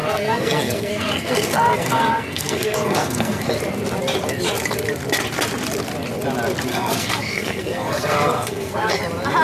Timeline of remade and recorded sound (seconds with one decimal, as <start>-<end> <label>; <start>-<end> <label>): 0.0-3.5 remade; 3.5-6.7 recorded; 6.7-9.0 remade; 9.0-9.4 recorded